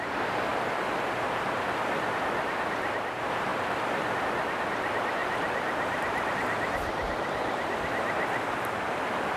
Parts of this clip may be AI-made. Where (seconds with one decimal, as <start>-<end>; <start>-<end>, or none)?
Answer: 0.5-1.4; 5.2-6.3